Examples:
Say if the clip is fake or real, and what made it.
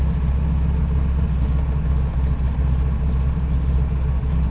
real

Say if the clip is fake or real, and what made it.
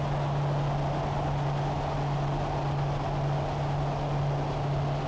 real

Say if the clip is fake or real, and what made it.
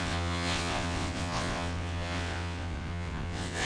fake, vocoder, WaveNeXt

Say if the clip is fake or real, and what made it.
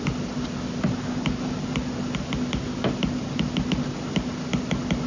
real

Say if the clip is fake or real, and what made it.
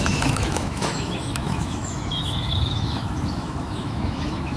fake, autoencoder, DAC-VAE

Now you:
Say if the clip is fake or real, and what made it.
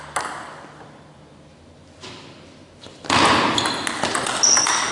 real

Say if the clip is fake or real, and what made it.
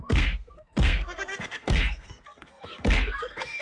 fake, codec, SNAC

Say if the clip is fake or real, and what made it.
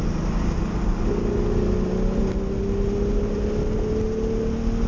real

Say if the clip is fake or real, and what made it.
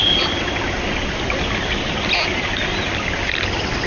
real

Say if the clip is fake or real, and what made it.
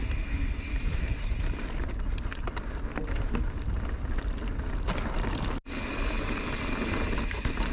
real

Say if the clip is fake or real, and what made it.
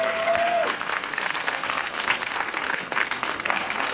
fake, codec, SNAC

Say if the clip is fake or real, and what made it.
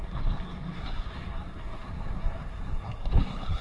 fake, codec, SNAC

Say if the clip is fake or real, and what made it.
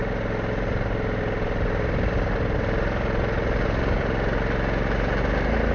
real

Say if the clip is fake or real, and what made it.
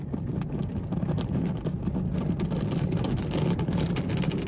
real